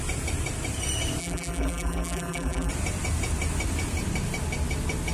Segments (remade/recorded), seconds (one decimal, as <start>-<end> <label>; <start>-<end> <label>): 0.0-1.2 recorded; 1.2-2.7 remade; 2.7-5.1 recorded